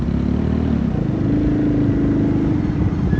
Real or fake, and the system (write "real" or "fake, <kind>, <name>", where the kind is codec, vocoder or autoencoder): real